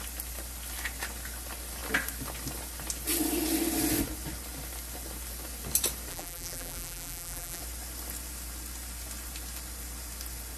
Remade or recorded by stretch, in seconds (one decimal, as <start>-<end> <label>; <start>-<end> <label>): 0.0-6.1 recorded; 6.1-7.6 remade; 7.6-10.6 recorded